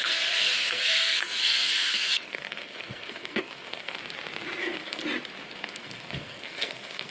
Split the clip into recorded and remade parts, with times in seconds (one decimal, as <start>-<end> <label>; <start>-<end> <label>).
0.0-4.0 remade; 4.0-4.6 recorded; 4.6-5.0 remade; 5.0-5.5 recorded; 5.5-7.1 remade